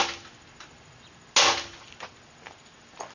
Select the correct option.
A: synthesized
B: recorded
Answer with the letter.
B